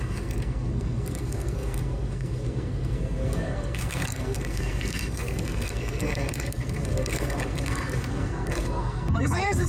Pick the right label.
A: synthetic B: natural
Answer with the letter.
A